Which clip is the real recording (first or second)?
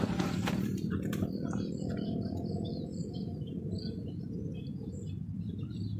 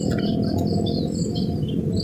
second